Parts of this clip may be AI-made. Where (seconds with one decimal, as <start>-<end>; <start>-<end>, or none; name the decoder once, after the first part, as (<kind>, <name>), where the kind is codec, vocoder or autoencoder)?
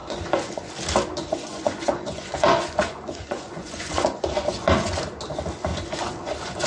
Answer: 0.0-0.7 (vocoder, Vocos); 1.2-5.0; 5.7-6.7